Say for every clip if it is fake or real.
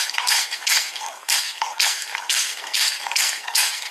fake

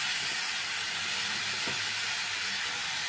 real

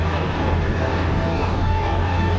fake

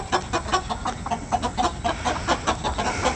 real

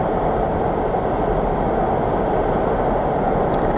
real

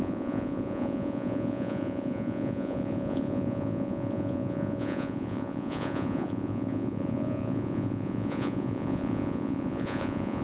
fake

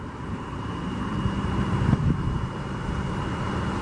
fake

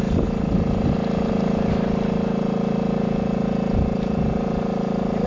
real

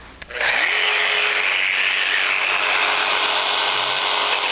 real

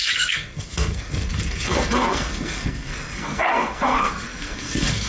fake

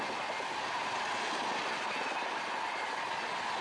real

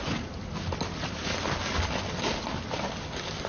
real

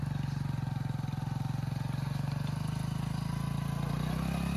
real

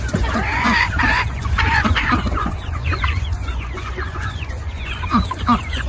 fake